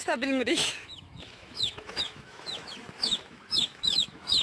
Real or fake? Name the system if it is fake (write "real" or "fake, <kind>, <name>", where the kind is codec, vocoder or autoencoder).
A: fake, autoencoder, DAC-VAE